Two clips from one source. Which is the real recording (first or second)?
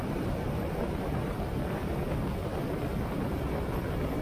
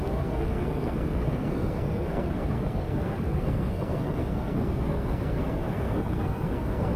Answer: first